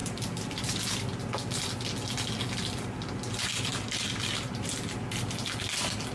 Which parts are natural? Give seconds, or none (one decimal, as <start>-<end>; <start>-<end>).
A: 0.8-3.7; 4.7-6.1